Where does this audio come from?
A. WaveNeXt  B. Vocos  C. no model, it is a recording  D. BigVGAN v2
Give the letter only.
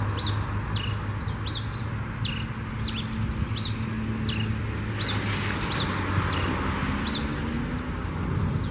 C